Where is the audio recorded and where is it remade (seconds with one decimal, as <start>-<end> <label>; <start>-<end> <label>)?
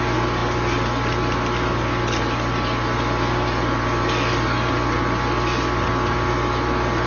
0.0-7.1 recorded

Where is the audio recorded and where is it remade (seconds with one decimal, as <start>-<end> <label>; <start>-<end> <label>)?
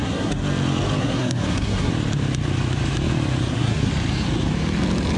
0.0-0.4 remade; 0.4-1.0 recorded; 1.0-1.9 remade; 1.9-3.5 recorded; 3.5-3.9 remade; 3.9-5.2 recorded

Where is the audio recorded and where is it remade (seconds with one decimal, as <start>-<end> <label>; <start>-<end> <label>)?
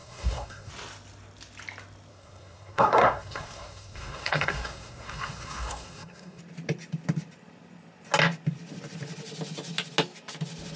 0.0-0.7 remade; 0.7-2.1 recorded; 2.1-6.4 remade; 6.4-10.8 recorded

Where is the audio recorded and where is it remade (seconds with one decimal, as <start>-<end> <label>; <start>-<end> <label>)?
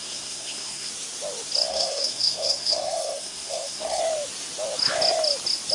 0.0-0.9 remade; 0.9-1.7 recorded; 1.7-4.0 remade; 4.0-5.7 recorded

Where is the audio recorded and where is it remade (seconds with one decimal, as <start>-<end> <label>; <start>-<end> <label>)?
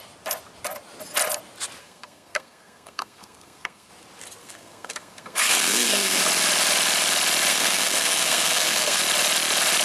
0.0-1.8 recorded; 1.8-3.9 remade; 3.9-4.4 recorded; 4.4-6.2 remade; 6.2-7.5 recorded; 7.5-9.0 remade; 9.0-9.8 recorded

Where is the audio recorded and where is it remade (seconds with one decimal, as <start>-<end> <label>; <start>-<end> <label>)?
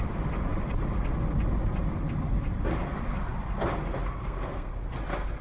0.0-4.2 recorded; 4.2-4.7 remade; 4.7-5.4 recorded